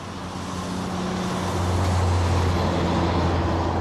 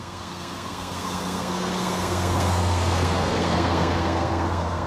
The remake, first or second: second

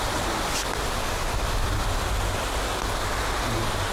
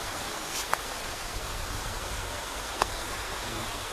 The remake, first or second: second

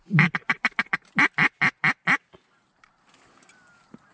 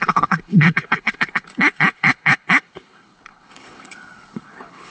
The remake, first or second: second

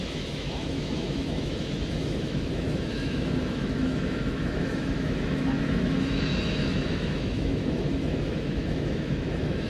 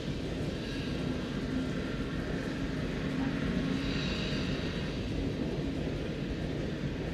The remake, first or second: first